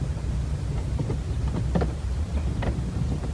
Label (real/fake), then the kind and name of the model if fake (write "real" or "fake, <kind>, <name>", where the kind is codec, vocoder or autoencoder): fake, vocoder, BigVGAN v2